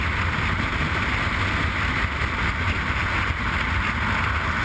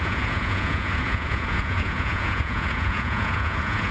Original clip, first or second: first